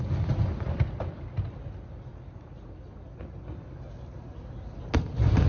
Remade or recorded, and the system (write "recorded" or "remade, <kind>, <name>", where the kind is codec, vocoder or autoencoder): recorded